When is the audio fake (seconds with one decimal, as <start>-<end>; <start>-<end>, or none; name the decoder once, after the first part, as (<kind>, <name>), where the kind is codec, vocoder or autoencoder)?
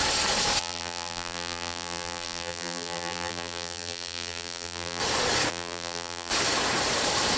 0.6-5.0 (vocoder, BigVGAN v2); 5.5-6.3